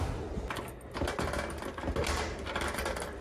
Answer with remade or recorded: recorded